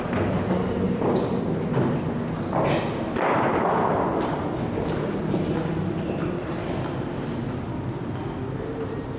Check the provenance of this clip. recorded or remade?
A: recorded